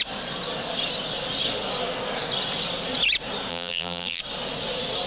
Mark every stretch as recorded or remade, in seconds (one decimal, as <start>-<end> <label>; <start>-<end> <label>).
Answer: 0.0-3.5 recorded; 3.5-4.2 remade; 4.2-5.1 recorded